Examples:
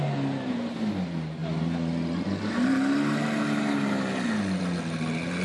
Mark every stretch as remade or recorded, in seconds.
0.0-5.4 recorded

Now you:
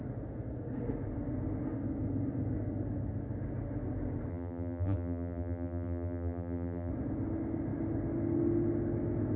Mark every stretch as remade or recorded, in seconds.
0.0-4.3 recorded; 4.3-6.9 remade; 6.9-9.4 recorded

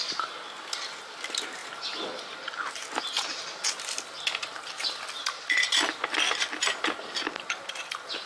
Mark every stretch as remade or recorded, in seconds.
0.0-8.3 recorded

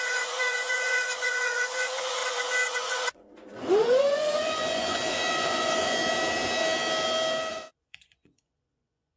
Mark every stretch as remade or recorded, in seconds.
0.0-6.0 remade; 6.0-7.5 recorded; 7.5-9.2 remade

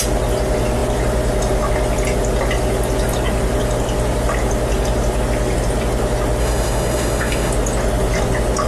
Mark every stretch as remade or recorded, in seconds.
0.0-6.4 recorded; 6.4-7.5 remade; 7.5-8.7 recorded

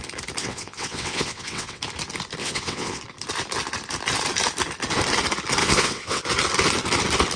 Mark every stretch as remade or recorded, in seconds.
0.0-0.4 recorded; 0.4-1.8 remade; 1.8-2.4 recorded; 2.4-3.0 remade; 3.0-5.6 recorded; 5.6-6.2 remade; 6.2-7.4 recorded

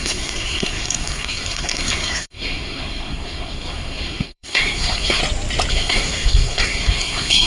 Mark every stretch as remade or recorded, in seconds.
0.0-5.2 remade; 5.2-5.7 recorded; 5.7-7.5 remade